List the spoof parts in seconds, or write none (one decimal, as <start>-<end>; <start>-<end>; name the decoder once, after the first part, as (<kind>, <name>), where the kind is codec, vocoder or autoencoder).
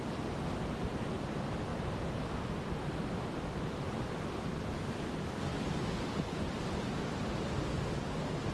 1.7-2.4 (vocoder, BigVGAN v2)